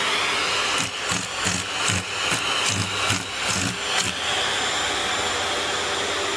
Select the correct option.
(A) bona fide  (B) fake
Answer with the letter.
A